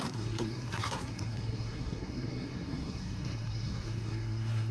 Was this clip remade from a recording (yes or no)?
yes